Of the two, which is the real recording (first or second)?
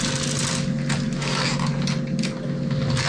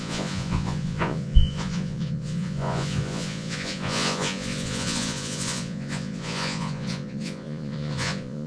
first